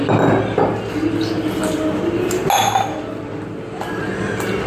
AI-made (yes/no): no